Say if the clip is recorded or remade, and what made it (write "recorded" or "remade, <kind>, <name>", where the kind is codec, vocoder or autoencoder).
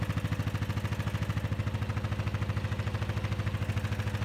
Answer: recorded